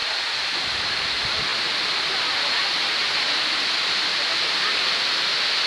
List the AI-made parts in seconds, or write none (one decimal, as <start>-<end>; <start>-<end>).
none